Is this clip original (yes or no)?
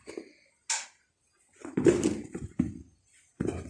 yes